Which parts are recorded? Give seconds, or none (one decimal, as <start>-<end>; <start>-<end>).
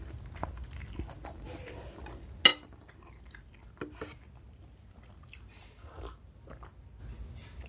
0.0-7.7